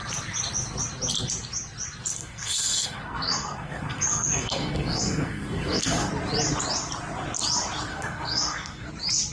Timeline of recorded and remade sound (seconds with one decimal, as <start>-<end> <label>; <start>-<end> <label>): 0.0-2.1 recorded; 2.1-6.1 remade; 6.1-7.9 recorded; 7.9-8.9 remade; 8.9-9.3 recorded